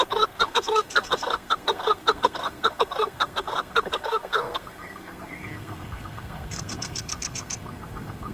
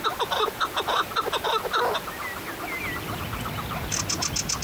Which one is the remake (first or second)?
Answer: first